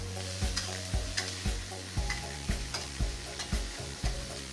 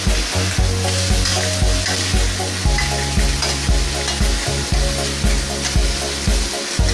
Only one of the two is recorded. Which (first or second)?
second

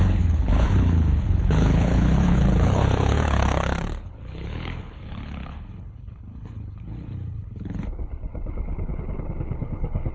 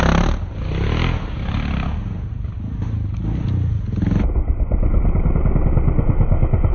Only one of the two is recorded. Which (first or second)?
second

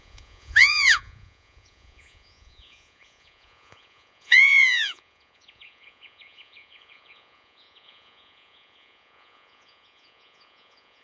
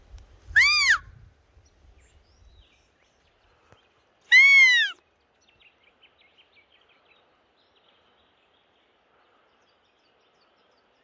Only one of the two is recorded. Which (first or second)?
second